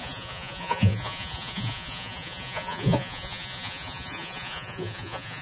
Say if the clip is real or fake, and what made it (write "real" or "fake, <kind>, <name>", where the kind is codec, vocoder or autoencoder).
fake, vocoder, Vocos